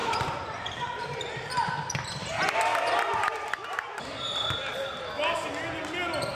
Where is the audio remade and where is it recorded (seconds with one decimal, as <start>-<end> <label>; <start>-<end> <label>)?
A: 0.0-1.7 remade; 1.7-6.3 recorded